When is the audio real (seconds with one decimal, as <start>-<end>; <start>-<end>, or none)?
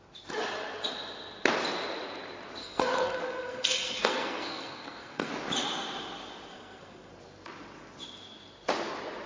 0.0-2.6; 5.3-6.5; 7.1-9.3